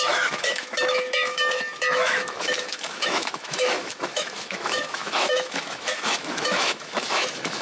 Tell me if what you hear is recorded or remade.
remade